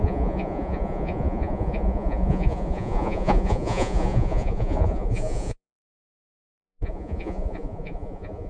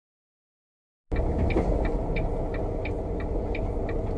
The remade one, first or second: first